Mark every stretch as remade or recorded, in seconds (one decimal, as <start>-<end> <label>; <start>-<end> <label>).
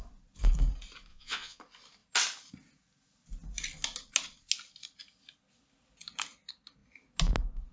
0.0-1.1 recorded; 1.1-1.6 remade; 1.6-7.7 recorded